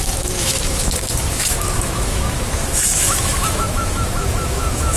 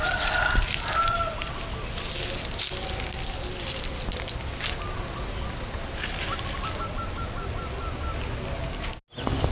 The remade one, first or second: first